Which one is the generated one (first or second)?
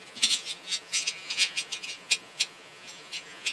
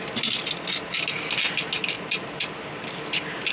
first